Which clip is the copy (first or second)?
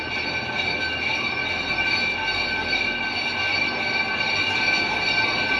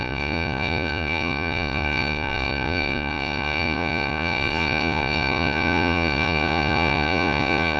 second